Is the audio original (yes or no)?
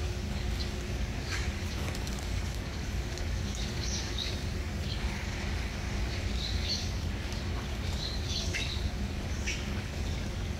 no